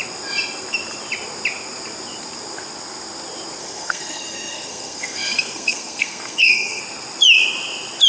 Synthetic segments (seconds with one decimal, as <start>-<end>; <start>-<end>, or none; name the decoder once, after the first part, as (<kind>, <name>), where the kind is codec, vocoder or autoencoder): 3.6-6.8 (codec, SNAC)